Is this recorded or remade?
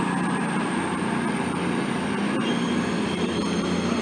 recorded